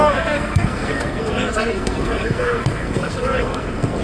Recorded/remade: remade